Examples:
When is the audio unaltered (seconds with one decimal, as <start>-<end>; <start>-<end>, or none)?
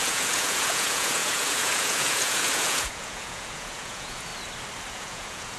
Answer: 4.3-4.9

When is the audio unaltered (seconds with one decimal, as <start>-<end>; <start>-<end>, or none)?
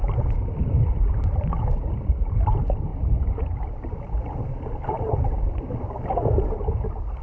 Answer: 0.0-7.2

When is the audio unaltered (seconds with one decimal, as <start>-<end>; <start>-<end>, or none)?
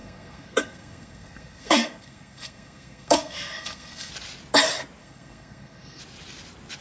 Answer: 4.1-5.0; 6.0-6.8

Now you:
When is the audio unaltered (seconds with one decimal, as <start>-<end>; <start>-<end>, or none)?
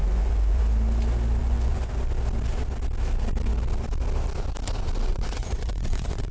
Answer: 0.6-1.4; 2.0-5.1